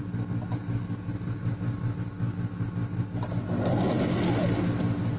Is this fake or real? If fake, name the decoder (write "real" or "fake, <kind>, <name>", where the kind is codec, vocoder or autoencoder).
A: real